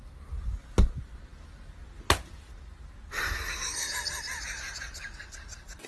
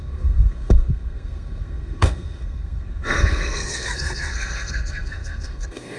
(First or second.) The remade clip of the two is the second